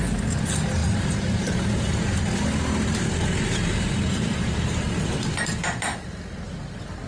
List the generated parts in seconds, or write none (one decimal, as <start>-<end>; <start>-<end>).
0.8-5.1